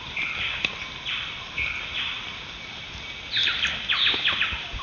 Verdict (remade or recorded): recorded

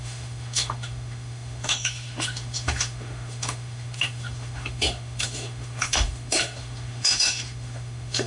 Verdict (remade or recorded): remade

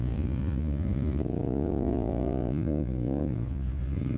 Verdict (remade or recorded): remade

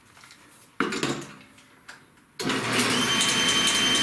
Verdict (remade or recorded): recorded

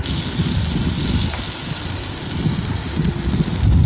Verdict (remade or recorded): recorded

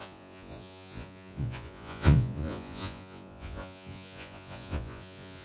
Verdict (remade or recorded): remade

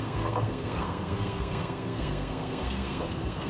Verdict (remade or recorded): remade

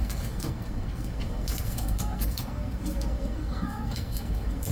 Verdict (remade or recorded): remade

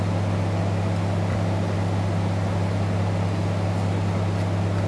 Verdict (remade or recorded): recorded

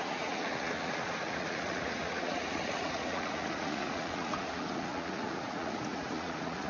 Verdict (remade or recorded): remade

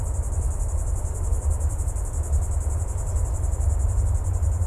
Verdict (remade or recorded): recorded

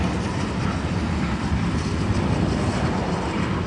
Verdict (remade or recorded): recorded